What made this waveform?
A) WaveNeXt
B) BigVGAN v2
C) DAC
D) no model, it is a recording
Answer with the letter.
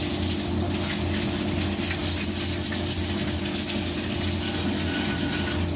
D